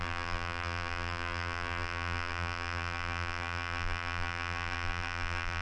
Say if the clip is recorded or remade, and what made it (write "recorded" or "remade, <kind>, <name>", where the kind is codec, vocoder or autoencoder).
remade, vocoder, BigVGAN v2